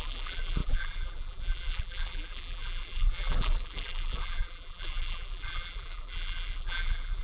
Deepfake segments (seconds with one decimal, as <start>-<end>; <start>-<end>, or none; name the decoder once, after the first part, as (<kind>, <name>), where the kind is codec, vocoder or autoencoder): 0.0-7.2 (vocoder, BigVGAN v2)